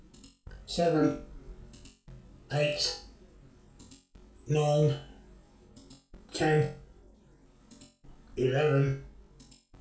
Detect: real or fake real